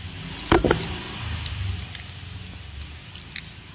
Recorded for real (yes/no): yes